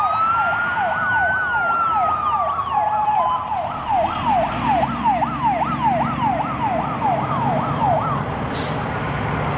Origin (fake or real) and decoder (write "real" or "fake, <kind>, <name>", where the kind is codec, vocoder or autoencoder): real